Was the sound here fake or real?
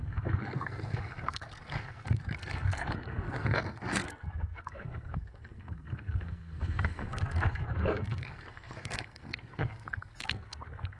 fake